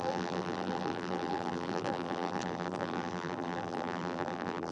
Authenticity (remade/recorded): remade